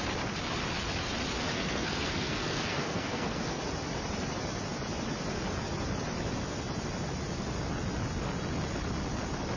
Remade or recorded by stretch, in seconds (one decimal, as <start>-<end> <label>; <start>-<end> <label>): 0.0-1.5 recorded; 1.5-3.6 remade; 3.6-9.6 recorded